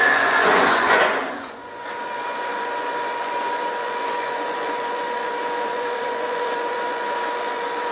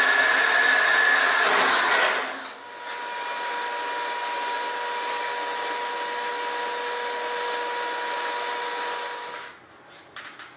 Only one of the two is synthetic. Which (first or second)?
first